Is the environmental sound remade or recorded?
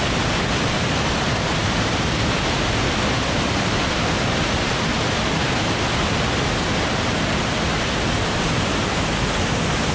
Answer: recorded